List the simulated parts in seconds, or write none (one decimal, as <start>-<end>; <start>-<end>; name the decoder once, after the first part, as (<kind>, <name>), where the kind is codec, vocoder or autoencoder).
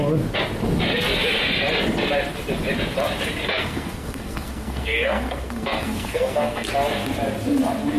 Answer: 3.5-6.7 (codec, SNAC)